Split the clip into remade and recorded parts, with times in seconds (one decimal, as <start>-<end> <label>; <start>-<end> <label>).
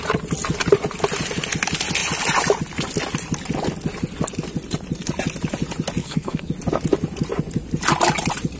0.0-6.0 recorded; 6.0-6.5 remade; 6.5-8.6 recorded